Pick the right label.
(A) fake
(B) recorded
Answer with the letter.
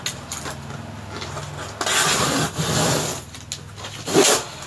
B